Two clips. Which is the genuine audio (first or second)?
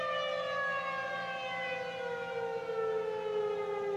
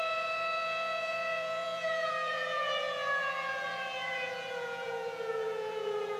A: first